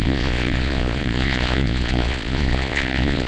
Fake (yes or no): yes